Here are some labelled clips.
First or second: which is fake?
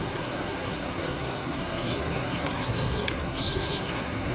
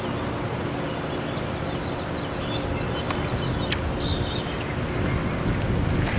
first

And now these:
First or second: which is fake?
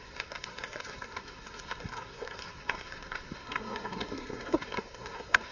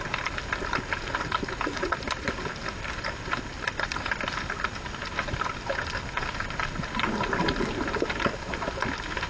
first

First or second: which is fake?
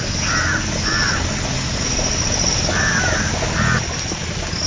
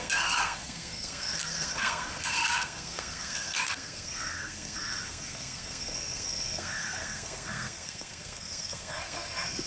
second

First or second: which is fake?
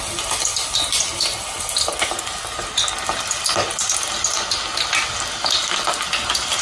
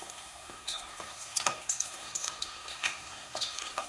second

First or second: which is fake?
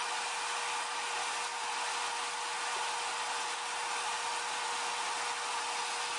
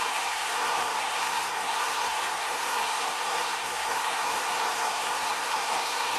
second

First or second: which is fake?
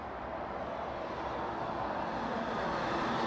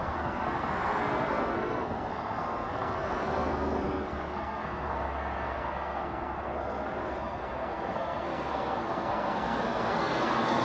second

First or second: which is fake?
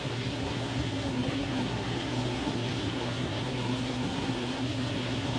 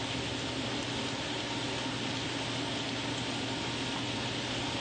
first